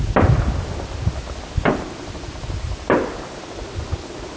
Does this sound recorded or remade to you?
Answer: recorded